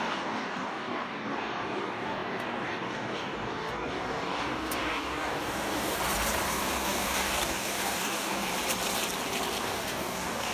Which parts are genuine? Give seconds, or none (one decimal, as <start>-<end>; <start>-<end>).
6.0-6.5; 8.5-9.6

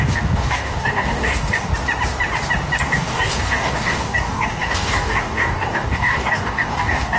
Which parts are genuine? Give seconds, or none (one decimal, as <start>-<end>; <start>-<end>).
1.7-2.8

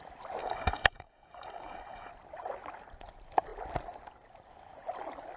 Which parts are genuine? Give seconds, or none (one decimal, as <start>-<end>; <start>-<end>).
0.0-0.4; 2.1-5.4

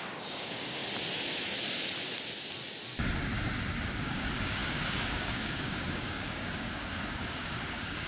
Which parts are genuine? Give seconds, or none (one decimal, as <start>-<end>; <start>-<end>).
0.8-4.0